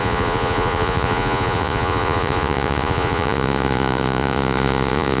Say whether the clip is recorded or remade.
remade